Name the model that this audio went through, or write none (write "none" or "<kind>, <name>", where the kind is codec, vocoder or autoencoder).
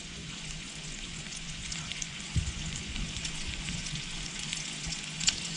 vocoder, Vocos